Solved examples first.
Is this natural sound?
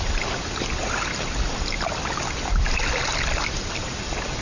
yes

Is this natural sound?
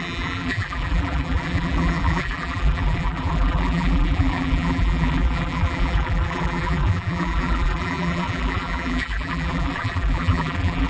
no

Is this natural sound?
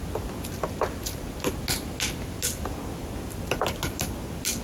yes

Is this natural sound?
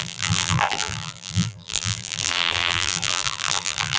no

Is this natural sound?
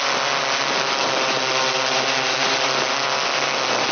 yes